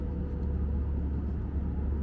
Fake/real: real